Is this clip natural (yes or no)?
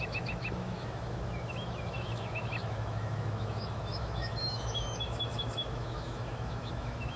no